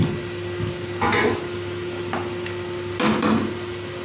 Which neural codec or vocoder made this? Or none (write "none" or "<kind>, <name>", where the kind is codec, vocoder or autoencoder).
none